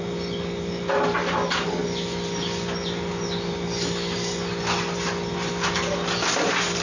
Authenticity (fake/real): real